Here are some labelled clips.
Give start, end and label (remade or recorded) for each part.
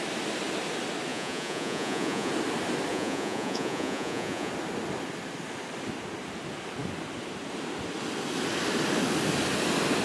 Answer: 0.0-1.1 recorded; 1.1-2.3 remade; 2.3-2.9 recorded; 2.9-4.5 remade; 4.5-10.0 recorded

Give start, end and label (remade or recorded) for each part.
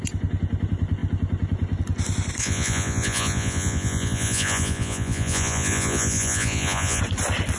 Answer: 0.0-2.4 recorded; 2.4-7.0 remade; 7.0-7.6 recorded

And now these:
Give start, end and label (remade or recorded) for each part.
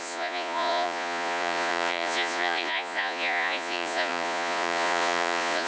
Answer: 0.0-5.7 remade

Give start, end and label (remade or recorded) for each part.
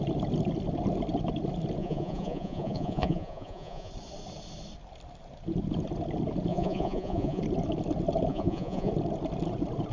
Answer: 0.0-1.8 recorded; 1.8-3.9 remade; 3.9-6.5 recorded; 6.5-7.4 remade; 7.4-8.3 recorded; 8.3-8.9 remade; 8.9-9.9 recorded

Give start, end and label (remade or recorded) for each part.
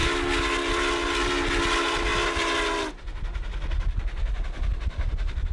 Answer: 0.0-5.5 recorded